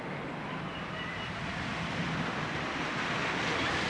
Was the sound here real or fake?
fake